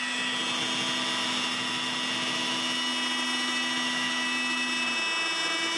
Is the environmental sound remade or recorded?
recorded